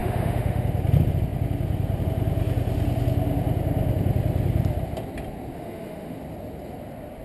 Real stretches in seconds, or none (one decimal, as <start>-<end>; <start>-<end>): 0.6-5.5; 6.2-7.2